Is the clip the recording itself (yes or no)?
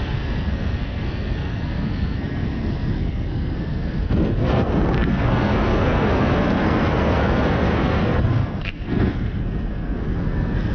no